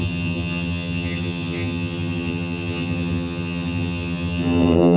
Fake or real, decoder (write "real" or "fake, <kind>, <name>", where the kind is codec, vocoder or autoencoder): fake, vocoder, HiFi-GAN